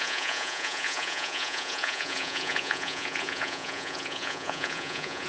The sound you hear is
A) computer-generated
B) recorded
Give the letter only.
A